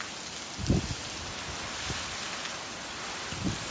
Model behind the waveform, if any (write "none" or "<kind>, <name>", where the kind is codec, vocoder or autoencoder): none